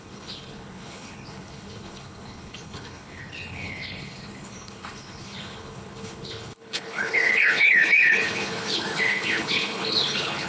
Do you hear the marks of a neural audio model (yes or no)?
yes